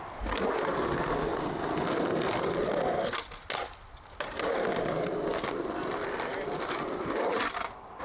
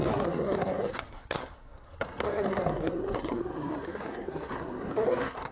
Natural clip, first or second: first